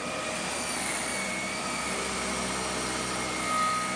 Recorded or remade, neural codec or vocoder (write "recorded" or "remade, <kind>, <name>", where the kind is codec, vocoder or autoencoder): recorded